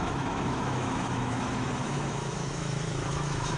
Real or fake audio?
fake